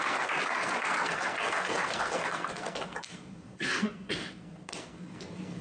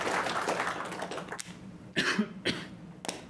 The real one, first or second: second